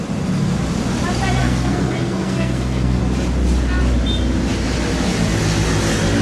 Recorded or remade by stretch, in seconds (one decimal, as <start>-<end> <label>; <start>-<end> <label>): 0.0-1.4 recorded; 1.4-3.0 remade; 3.0-6.2 recorded